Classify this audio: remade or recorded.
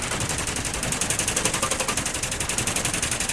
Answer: recorded